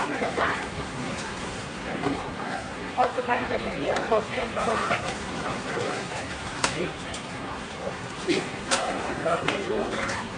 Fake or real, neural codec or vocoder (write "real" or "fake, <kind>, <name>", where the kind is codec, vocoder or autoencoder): fake, codec, SNAC